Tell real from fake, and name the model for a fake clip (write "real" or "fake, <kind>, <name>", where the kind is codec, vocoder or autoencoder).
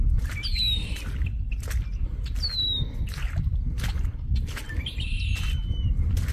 real